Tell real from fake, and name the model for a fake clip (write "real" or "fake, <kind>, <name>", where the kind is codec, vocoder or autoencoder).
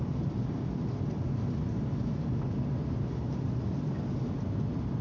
real